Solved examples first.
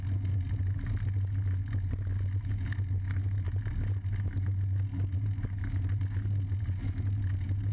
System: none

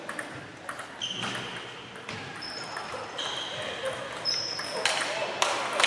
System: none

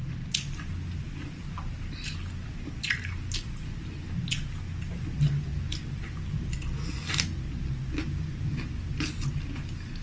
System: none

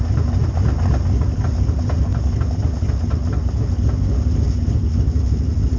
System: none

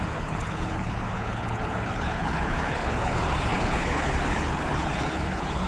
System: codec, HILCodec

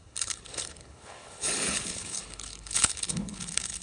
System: codec, HILCodec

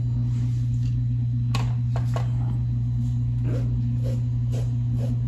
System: none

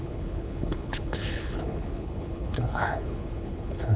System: codec, HILCodec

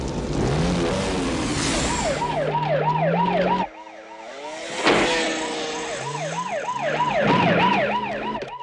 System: none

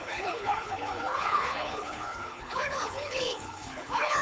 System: codec, HILCodec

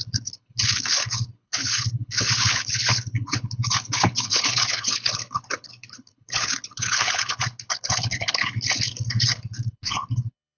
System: codec, HILCodec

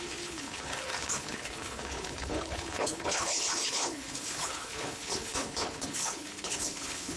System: codec, HILCodec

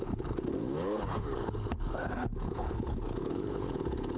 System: codec, HILCodec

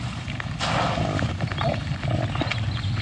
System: none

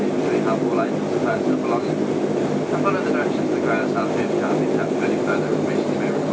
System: none